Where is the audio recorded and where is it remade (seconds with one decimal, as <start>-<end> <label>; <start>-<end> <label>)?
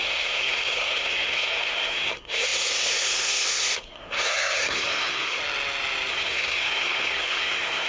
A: 0.0-5.4 remade; 5.4-6.1 recorded; 6.1-7.9 remade